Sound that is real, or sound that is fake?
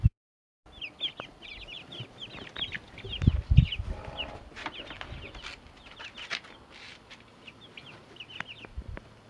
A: real